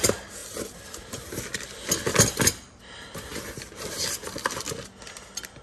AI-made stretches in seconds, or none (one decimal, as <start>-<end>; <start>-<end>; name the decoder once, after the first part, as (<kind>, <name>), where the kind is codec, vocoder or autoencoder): none